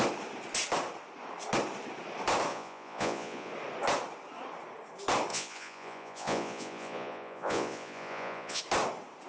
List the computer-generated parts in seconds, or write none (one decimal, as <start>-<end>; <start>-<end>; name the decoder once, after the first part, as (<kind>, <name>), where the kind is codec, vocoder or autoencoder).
2.5-3.5 (vocoder, Vocos); 5.3-8.6